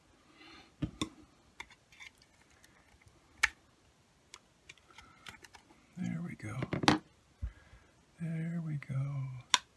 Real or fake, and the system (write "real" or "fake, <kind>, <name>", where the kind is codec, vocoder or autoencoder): real